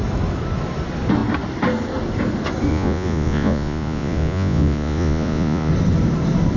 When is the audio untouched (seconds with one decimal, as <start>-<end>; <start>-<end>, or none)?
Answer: 0.0-2.7; 5.7-6.6